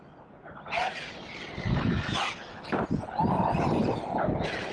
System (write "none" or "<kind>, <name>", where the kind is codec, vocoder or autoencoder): none